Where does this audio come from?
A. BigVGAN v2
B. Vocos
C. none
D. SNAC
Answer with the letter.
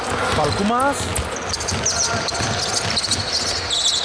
C